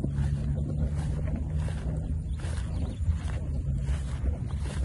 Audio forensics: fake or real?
real